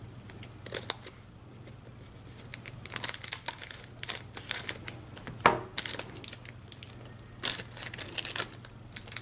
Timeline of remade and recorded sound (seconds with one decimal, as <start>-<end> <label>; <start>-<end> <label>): 0.0-9.2 recorded